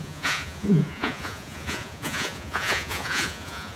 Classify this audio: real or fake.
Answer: fake